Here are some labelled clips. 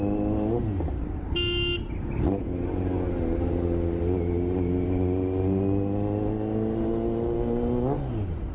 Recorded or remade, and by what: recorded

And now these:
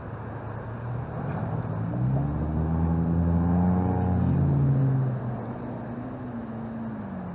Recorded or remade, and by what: recorded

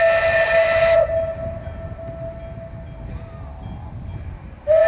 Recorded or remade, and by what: recorded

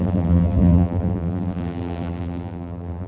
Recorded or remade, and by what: remade, vocoder, BigVGAN v2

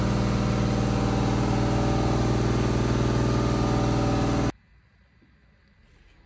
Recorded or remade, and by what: recorded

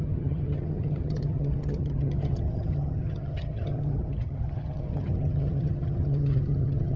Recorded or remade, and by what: remade, vocoder, HiFi-GAN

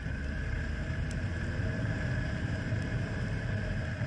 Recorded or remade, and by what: remade, vocoder, BigVGAN v2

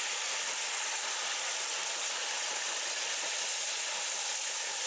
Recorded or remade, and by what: recorded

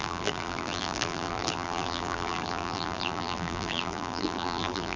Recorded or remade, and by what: remade, vocoder, BigVGAN v2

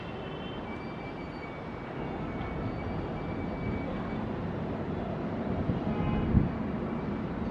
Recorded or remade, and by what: recorded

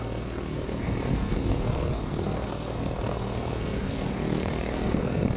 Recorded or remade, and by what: remade, codec, SNAC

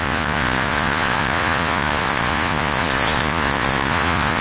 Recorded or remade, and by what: remade, vocoder, Vocos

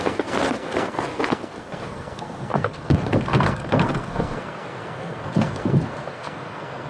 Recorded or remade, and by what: remade, codec, SNAC